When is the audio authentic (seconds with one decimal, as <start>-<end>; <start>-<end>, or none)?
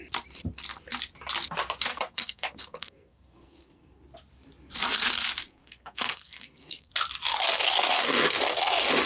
0.0-1.9; 4.0-5.5; 6.9-9.1